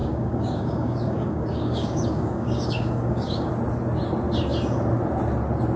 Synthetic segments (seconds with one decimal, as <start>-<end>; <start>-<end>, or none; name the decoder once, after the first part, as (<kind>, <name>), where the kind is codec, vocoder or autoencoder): 0.0-3.5 (codec, DAC)